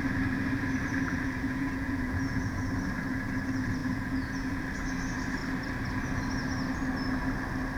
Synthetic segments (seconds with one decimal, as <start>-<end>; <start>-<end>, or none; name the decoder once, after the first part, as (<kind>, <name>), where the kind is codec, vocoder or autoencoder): 1.1-2.7 (vocoder, Vocos); 3.8-4.6